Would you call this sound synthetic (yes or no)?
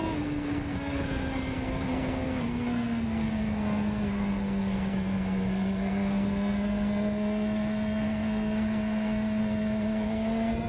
yes